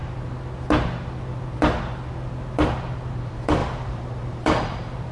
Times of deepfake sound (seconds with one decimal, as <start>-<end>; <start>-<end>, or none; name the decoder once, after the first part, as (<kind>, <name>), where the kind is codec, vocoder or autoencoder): 3.1-5.1 (vocoder, BigVGAN v2)